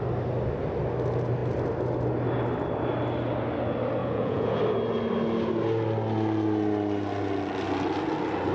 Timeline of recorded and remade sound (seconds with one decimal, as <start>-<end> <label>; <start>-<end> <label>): 0.0-4.0 recorded; 4.0-4.6 remade; 4.6-8.5 recorded